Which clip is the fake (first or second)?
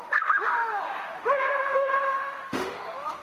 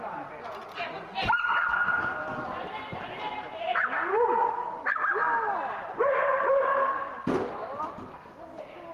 first